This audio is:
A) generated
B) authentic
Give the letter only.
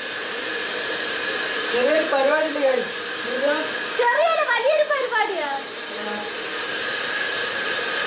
A